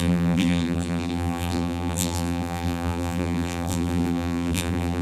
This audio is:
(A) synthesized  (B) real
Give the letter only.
A